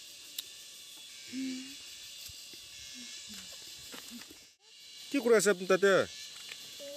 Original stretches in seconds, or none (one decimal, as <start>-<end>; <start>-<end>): 0.0-3.8; 4.7-6.4